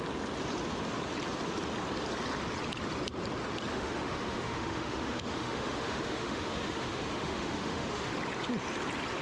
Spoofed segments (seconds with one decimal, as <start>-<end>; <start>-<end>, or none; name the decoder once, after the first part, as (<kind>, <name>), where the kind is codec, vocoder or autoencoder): 3.7-8.1 (autoencoder, DAC-VAE)